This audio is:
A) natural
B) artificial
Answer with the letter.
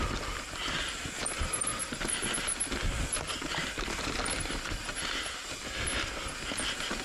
A